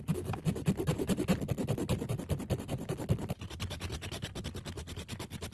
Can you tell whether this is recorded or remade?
recorded